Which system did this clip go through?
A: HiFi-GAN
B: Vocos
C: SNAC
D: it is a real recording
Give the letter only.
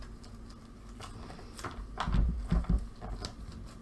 D